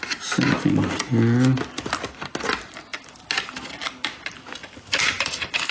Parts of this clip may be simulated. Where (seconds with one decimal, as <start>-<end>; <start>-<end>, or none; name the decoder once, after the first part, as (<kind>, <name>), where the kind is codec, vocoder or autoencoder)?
none